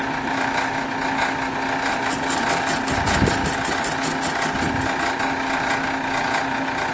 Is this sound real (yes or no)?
yes